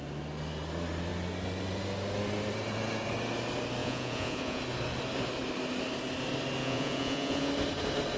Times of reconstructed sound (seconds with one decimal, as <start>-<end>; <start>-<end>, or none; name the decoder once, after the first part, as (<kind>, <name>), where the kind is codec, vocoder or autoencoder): 3.8-4.6 (vocoder, Vocos); 6.6-7.5